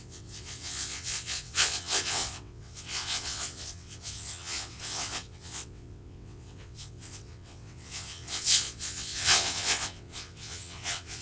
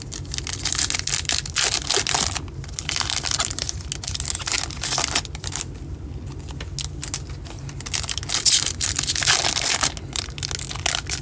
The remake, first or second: first